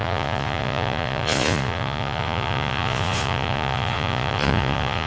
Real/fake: fake